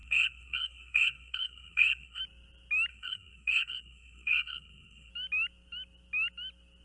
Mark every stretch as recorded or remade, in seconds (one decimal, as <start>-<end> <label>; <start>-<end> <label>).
0.0-2.2 remade; 2.2-2.9 recorded; 2.9-5.1 remade; 5.1-6.8 recorded